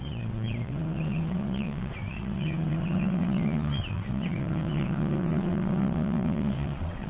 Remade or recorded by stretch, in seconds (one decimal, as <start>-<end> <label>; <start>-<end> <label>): 0.0-7.1 remade